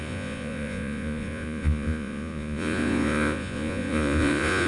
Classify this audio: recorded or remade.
remade